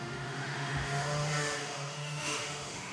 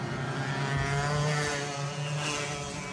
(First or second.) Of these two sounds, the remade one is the first